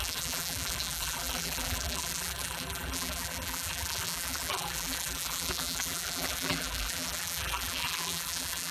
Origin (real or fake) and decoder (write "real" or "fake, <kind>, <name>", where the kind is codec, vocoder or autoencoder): fake, vocoder, BigVGAN v2